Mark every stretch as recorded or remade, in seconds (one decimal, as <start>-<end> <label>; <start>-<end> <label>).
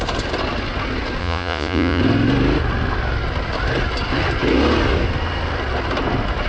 0.0-1.2 recorded; 1.2-2.0 remade; 2.0-6.5 recorded